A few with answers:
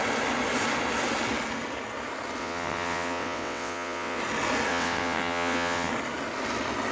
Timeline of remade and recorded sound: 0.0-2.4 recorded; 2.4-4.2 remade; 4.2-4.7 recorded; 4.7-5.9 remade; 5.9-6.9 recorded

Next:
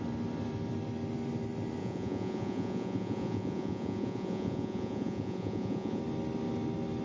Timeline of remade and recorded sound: 0.0-1.8 recorded; 1.8-6.0 remade; 6.0-7.0 recorded

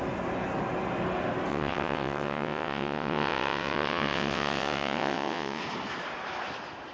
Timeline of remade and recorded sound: 0.0-1.5 recorded; 1.5-5.6 remade; 5.6-6.9 recorded

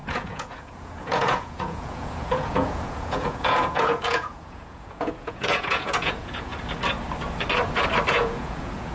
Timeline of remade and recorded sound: 0.0-6.5 remade; 6.5-8.1 recorded; 8.1-8.9 remade

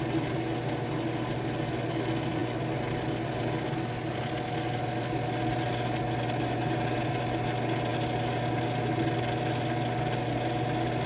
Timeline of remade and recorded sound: 0.0-11.1 recorded

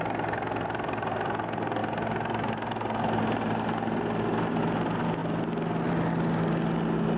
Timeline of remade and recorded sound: 0.0-7.2 recorded

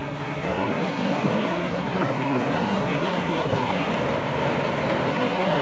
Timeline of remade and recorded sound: 0.0-3.9 remade; 3.9-5.1 recorded; 5.1-5.6 remade

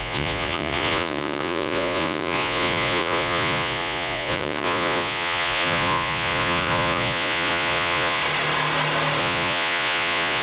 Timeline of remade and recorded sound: 0.0-8.2 remade; 8.2-9.2 recorded; 9.2-10.4 remade